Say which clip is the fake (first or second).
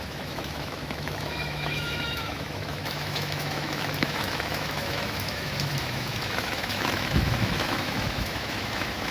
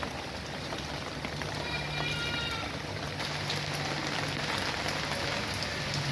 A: first